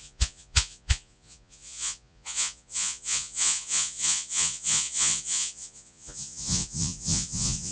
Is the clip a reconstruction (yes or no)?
yes